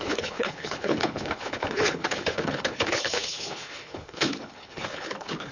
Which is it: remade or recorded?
remade